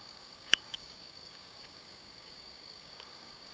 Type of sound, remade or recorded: remade